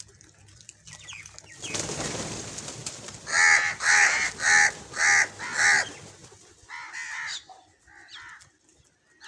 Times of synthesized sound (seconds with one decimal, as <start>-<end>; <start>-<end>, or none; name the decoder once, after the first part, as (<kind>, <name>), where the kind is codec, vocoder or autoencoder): none